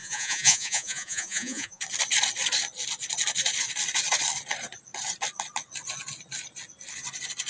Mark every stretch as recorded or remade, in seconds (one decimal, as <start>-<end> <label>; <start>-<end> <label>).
0.0-1.8 remade; 1.8-7.5 recorded